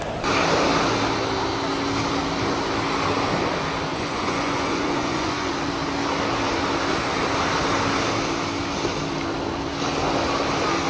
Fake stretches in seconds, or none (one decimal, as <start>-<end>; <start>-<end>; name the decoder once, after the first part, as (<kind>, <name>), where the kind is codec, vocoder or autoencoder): 3.9-5.5 (vocoder, Vocos)